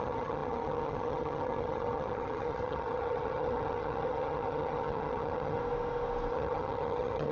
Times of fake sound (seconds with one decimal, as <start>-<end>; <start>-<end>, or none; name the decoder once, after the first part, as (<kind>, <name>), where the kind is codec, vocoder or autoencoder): 0.0-5.6 (vocoder, HiFi-GAN); 6.3-7.3